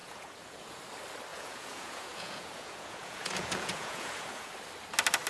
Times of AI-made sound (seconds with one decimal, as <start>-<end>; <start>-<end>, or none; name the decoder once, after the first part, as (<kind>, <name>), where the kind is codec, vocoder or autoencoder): 0.0-0.8 (vocoder, Vocos); 1.3-4.5